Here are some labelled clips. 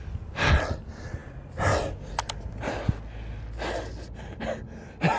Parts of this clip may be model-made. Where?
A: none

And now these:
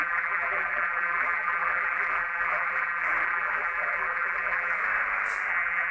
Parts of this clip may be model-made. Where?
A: 0.0-4.8 (vocoder, BigVGAN v2); 5.5-5.9

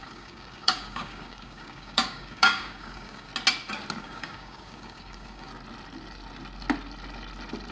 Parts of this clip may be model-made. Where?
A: 0.0-3.3 (codec, DAC); 4.0-5.5

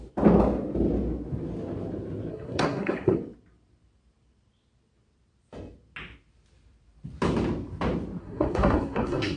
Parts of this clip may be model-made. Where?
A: 2.3-3.2 (codec, SNAC); 8.2-9.4

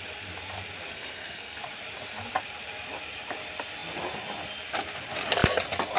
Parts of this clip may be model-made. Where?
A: 0.9-1.6 (codec, SNAC)

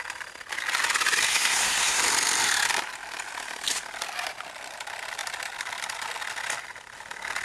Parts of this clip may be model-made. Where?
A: 1.3-2.0 (codec, SNAC)